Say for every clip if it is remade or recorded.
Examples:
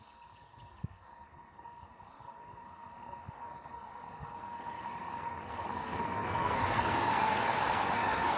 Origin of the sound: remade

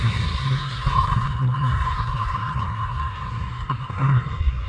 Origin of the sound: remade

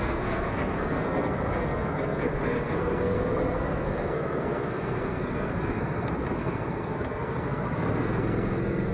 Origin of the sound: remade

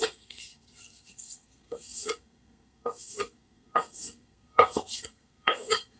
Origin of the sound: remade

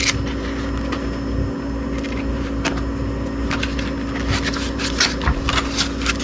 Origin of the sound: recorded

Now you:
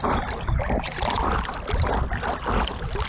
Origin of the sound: recorded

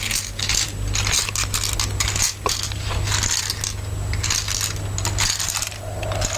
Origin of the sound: recorded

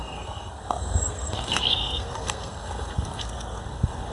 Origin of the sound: remade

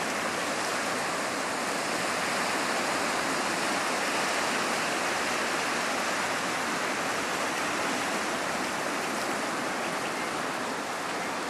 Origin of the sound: recorded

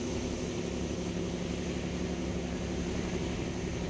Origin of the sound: recorded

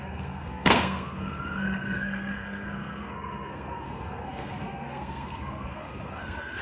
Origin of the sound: remade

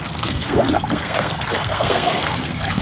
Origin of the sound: remade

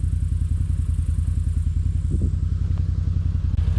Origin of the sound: recorded